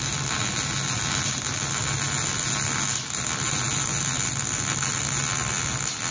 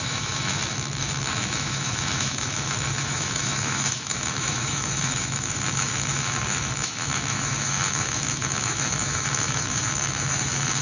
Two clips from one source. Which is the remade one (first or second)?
second